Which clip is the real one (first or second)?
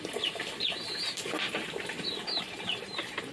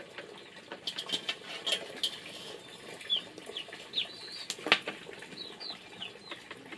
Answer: second